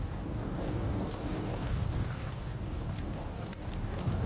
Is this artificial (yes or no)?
yes